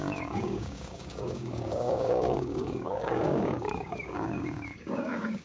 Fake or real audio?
fake